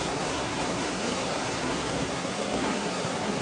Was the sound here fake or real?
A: fake